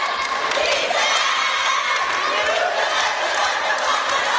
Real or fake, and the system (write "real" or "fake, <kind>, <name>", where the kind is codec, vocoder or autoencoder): real